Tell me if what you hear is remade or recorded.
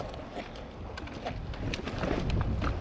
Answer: recorded